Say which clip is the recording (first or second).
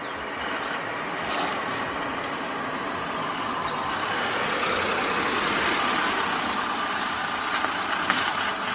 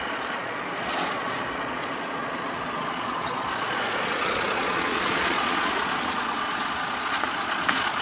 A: first